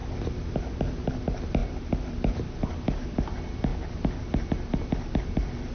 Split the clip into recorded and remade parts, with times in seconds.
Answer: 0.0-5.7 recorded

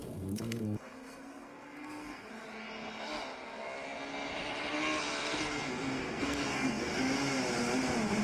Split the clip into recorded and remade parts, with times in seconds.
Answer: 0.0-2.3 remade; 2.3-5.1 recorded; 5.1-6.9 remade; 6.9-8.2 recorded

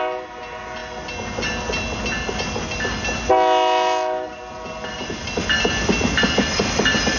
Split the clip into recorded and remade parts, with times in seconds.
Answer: 0.0-7.2 recorded

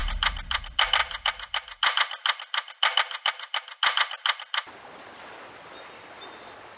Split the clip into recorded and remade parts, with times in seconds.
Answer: 0.0-6.8 recorded

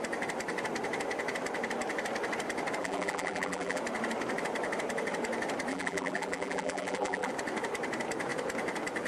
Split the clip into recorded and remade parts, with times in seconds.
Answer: 0.0-2.8 recorded; 2.8-3.8 remade; 3.8-5.7 recorded; 5.7-7.3 remade; 7.3-9.1 recorded

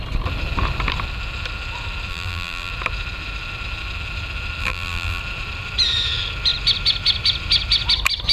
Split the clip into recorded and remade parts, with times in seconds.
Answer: 0.0-2.1 recorded; 2.1-2.7 remade; 2.7-4.6 recorded; 4.6-5.2 remade; 5.2-8.3 recorded

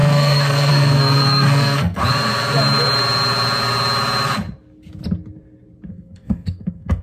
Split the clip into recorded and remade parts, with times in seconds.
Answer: 0.0-2.0 remade; 2.0-5.9 recorded; 5.9-7.0 remade

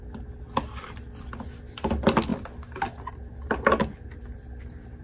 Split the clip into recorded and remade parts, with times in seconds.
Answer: 0.0-5.0 recorded